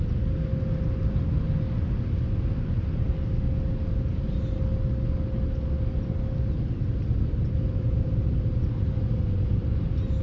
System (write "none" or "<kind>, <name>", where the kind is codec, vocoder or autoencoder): none